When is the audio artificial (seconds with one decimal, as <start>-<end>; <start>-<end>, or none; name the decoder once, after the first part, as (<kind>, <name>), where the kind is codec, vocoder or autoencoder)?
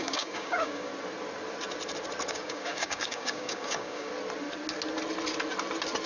0.0-0.9 (codec, DAC); 2.3-4.1